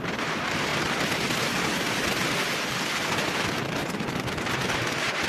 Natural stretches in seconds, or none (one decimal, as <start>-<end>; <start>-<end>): 0.0-5.3